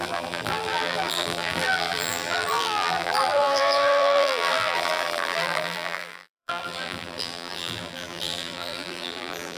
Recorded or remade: remade